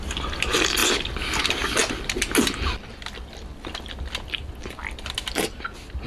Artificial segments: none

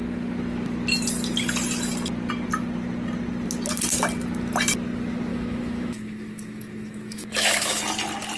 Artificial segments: 5.3-7.8 (autoencoder, DAC-VAE)